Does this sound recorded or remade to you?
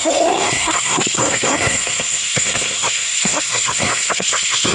remade